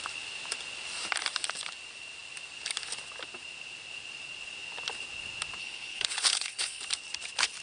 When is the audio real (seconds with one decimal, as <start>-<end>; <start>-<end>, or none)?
0.0-5.6; 6.8-7.6